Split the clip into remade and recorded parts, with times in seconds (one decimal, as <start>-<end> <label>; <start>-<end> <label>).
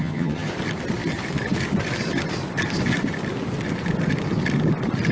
0.0-0.5 remade; 0.5-5.1 recorded